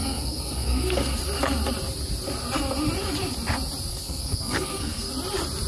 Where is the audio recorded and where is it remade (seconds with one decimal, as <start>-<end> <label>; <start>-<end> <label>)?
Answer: 0.0-1.2 remade; 1.2-3.9 recorded; 3.9-5.1 remade; 5.1-5.7 recorded